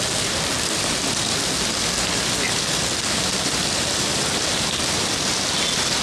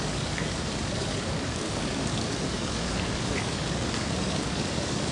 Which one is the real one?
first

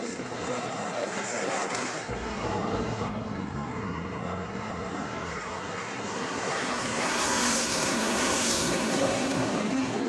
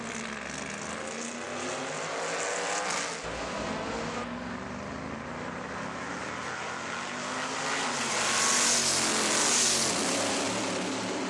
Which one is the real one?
second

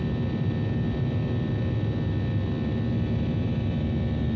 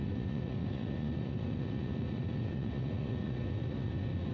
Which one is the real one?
first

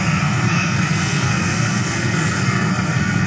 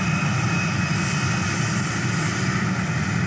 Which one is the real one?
second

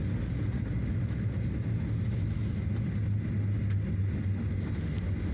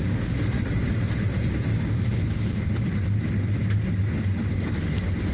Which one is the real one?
first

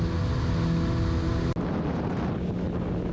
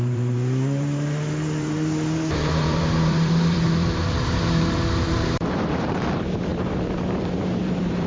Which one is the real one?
first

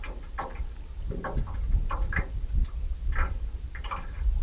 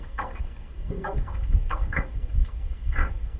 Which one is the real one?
first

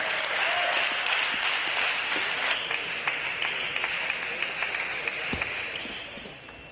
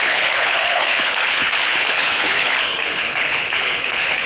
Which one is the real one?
first